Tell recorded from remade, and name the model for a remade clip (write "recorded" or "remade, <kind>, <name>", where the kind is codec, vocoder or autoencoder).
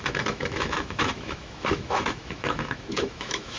remade, autoencoder, DAC-VAE